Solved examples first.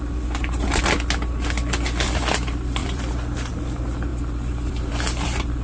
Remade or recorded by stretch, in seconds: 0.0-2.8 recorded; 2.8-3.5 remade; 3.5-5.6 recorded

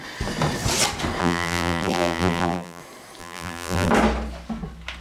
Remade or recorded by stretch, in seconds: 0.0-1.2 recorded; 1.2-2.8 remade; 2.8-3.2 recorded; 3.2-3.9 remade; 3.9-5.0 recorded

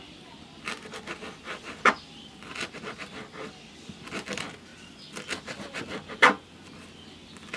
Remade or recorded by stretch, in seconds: 0.0-7.6 recorded